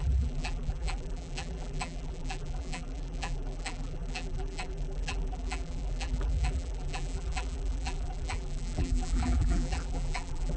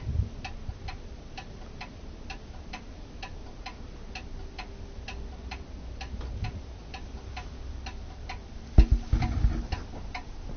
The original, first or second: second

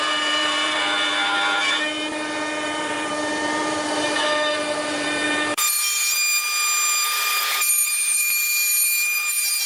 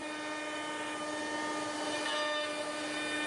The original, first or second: second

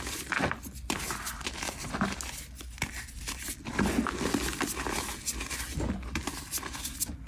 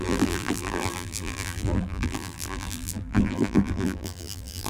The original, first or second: first